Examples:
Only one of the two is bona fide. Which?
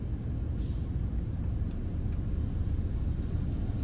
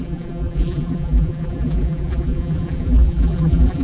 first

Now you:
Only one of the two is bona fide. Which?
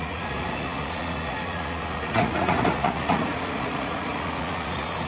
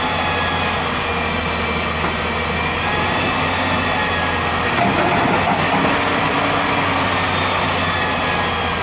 second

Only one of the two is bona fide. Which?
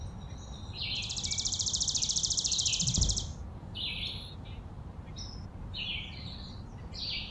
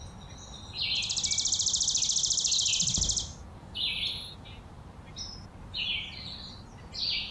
second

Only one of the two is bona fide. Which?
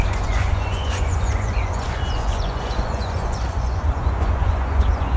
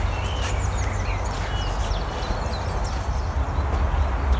second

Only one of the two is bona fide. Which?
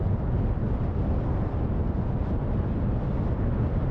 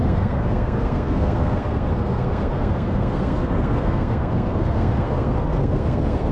first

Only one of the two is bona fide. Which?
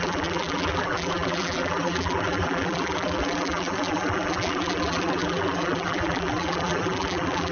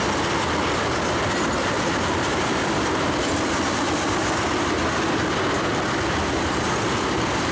second